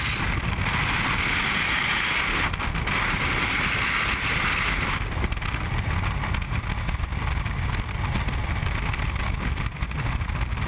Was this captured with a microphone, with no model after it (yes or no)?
yes